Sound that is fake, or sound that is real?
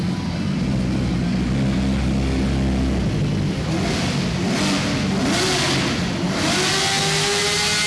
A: real